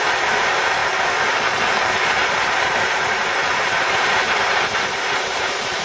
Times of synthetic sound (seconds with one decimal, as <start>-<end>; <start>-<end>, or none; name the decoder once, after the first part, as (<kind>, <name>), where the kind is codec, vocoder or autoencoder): 0.0-0.8 (vocoder, BigVGAN v2); 1.9-5.8